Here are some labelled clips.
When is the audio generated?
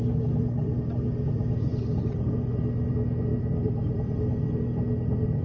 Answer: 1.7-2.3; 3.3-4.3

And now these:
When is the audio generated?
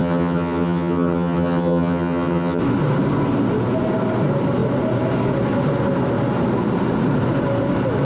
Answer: 0.0-2.6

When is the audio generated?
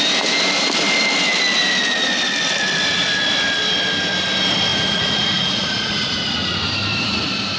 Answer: 4.7-6.7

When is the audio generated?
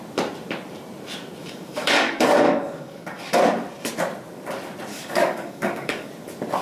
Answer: 1.4-3.4; 4.9-6.1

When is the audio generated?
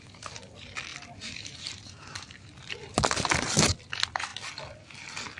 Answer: 0.9-3.3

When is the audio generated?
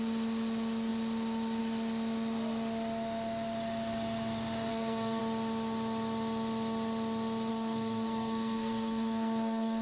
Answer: 4.7-5.2; 7.5-9.8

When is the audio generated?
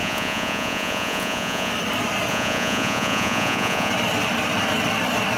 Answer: 0.0-1.7; 2.3-3.9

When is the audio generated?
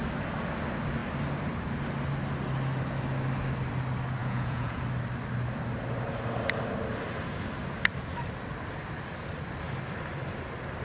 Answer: 4.2-4.8